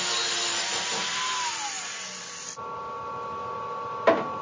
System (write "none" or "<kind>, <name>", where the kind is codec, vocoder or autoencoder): none